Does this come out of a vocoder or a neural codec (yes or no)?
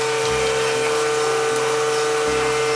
no